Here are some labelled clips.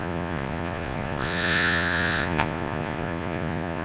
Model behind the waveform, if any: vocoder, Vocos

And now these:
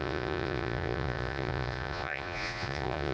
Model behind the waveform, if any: vocoder, Vocos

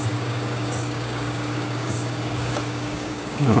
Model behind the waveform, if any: codec, DAC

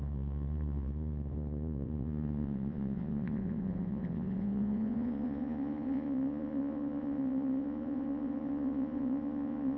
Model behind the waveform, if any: vocoder, Vocos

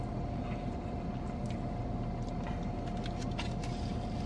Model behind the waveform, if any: none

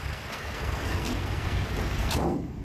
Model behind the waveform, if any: codec, SNAC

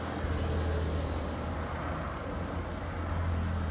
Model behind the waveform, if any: none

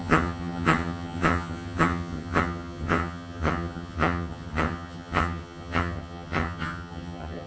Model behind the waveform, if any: vocoder, HiFi-GAN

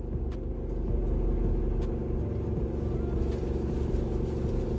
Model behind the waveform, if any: none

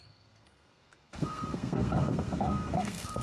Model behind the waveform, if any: codec, SNAC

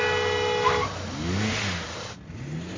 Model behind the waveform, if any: none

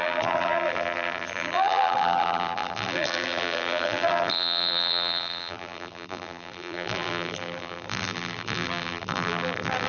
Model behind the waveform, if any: vocoder, BigVGAN v2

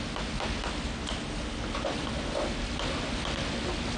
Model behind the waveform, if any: none